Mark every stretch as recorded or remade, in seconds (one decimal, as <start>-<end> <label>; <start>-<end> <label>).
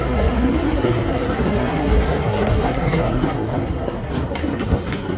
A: 0.0-5.2 remade